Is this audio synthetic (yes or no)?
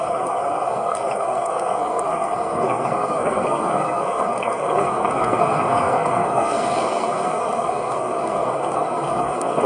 yes